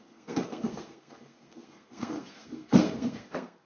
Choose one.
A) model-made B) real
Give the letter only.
A